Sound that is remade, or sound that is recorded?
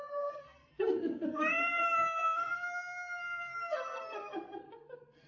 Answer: remade